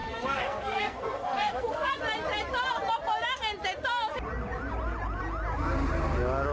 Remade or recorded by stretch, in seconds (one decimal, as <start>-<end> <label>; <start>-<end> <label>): 0.0-1.9 remade; 1.9-6.5 recorded